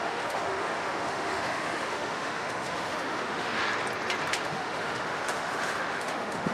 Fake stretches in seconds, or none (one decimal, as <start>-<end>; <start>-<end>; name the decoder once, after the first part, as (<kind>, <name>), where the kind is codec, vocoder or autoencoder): 0.0-3.6 (autoencoder, DAC-VAE); 4.3-6.5